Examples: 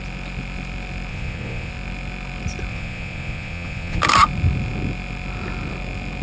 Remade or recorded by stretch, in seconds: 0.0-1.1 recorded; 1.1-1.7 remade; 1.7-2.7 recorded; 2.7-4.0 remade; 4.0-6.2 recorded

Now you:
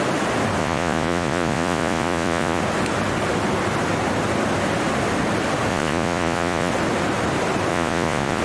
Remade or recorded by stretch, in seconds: 0.0-0.6 recorded; 0.6-2.6 remade; 2.6-5.7 recorded; 5.7-6.7 remade; 6.7-7.7 recorded; 7.7-8.4 remade

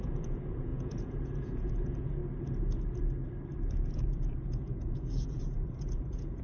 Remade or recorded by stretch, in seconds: 0.0-2.2 remade; 2.2-3.9 recorded; 3.9-6.4 remade

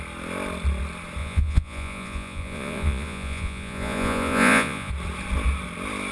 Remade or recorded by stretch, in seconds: 0.0-1.2 recorded; 1.2-4.9 remade; 4.9-6.1 recorded